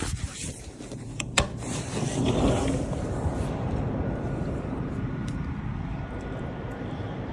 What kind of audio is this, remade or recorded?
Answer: remade